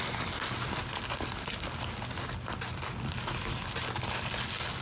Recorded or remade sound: recorded